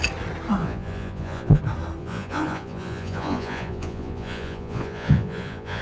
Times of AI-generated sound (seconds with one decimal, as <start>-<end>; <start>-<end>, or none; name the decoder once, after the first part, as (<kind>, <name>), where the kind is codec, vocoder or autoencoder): 0.6-1.6 (vocoder, Vocos); 2.0-5.8